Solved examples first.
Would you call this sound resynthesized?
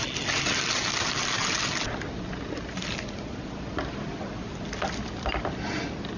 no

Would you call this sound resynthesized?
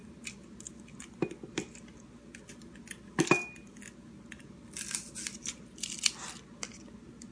no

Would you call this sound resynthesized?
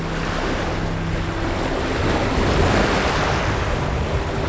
no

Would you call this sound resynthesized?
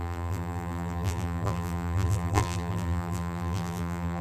yes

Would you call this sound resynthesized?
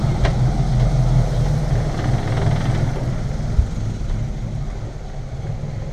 no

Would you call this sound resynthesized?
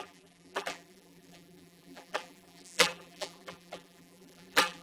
yes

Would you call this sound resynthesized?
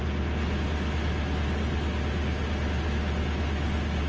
no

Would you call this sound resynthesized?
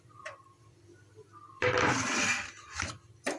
yes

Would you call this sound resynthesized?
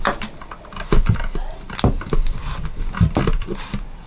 no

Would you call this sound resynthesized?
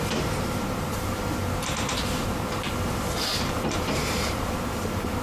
yes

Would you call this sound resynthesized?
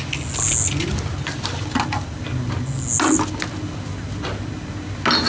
no